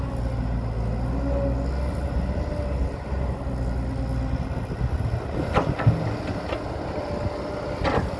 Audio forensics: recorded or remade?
recorded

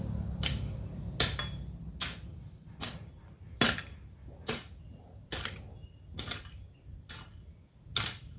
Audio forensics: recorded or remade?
recorded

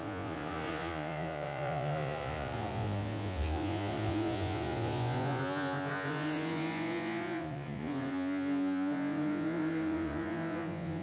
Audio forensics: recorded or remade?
remade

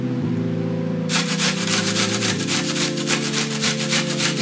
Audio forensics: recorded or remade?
remade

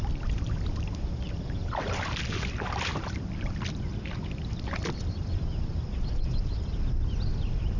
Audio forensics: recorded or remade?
remade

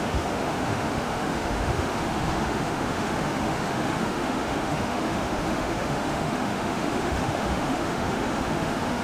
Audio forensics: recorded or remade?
remade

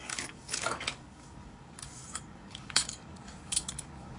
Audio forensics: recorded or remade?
remade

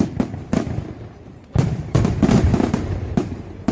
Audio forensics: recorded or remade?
recorded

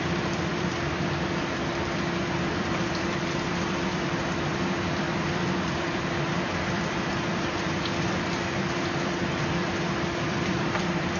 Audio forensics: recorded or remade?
remade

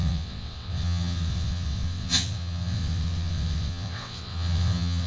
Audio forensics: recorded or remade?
remade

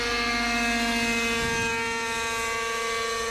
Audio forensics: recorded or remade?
recorded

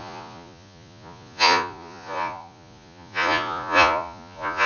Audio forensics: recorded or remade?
remade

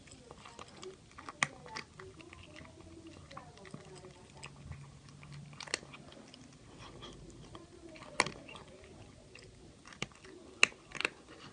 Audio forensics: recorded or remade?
recorded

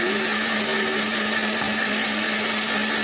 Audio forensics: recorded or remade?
recorded